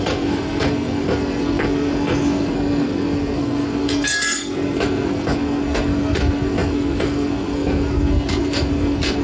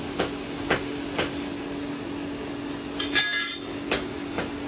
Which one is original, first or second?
second